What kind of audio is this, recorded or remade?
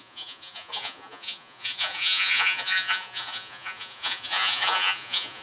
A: remade